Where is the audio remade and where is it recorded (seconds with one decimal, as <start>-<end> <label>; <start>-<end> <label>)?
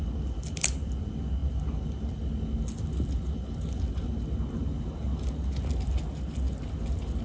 0.0-7.2 recorded